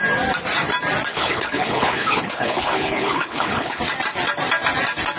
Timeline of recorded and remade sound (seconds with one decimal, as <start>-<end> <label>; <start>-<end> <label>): 0.0-1.1 recorded; 1.1-3.8 remade; 3.8-5.2 recorded